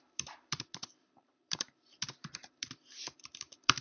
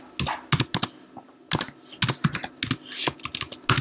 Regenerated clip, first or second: first